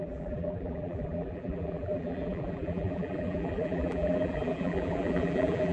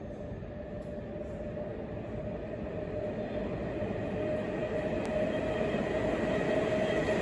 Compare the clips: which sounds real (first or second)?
second